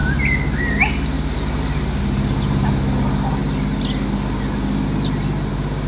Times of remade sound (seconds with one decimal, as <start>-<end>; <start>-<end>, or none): none